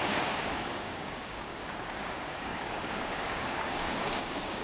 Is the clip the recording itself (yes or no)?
no